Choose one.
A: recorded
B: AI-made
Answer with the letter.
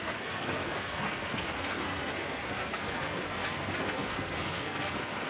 B